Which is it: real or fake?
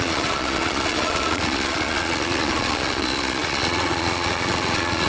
fake